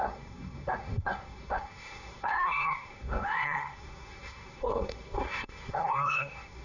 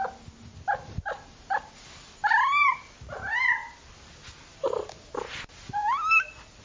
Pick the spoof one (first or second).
first